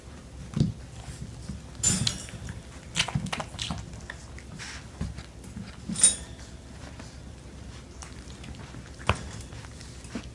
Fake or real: real